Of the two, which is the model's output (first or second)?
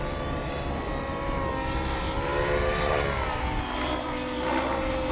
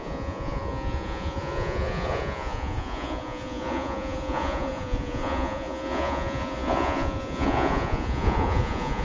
second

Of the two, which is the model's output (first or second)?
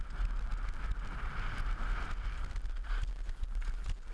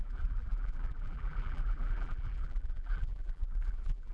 second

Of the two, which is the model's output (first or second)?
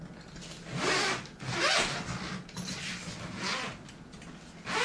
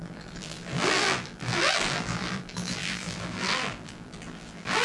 second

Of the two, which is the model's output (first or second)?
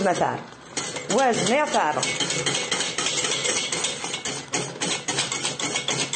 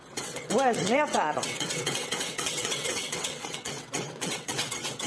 second